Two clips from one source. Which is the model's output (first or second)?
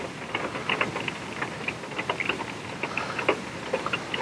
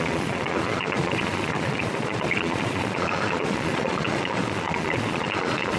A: second